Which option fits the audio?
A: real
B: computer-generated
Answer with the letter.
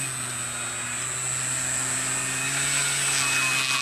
A